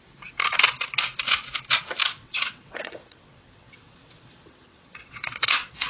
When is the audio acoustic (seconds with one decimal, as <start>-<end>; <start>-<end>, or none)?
0.0-2.2